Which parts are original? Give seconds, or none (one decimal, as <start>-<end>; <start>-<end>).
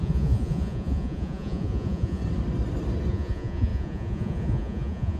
2.2-3.1